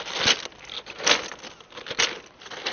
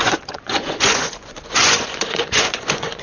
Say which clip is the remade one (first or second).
second